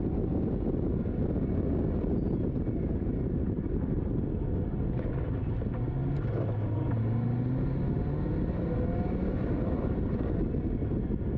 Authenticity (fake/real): real